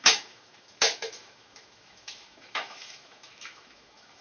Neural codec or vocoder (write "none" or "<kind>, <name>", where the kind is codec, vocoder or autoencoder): autoencoder, DAC-VAE